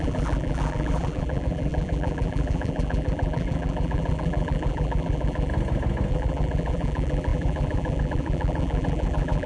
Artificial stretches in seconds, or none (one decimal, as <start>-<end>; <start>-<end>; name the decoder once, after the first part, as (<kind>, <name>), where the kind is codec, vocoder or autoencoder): 0.0-5.5 (vocoder, BigVGAN v2); 6.1-9.5